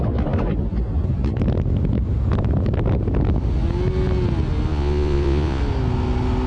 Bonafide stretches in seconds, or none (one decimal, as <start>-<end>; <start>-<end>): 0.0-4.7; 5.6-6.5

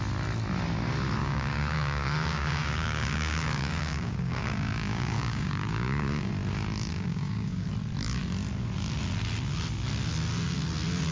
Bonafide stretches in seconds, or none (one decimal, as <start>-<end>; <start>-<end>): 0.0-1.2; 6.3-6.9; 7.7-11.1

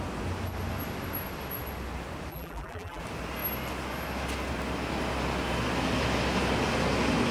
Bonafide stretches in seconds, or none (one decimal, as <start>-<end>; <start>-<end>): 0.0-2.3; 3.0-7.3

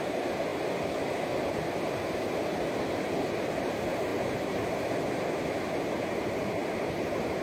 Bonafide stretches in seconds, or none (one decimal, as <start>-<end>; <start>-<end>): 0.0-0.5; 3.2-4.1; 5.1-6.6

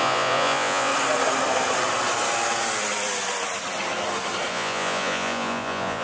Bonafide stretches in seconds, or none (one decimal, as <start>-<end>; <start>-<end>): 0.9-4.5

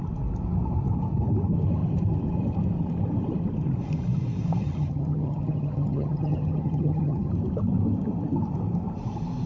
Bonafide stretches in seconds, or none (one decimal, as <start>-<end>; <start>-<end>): 0.0-4.6; 7.3-9.5

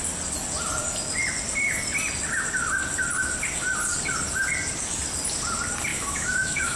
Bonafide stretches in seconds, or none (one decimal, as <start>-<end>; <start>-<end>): 0.0-5.9

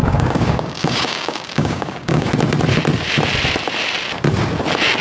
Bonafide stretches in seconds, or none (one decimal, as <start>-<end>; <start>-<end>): 2.3-5.0